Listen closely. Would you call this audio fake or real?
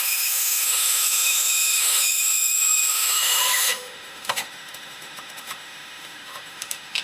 fake